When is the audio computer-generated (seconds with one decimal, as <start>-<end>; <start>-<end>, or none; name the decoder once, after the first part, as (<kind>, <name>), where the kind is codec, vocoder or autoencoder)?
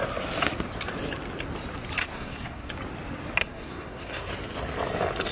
2.0-2.7 (codec, SNAC); 3.4-4.3